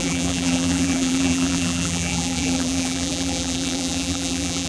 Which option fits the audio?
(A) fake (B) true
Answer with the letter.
A